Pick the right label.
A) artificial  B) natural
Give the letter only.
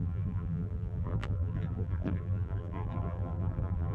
A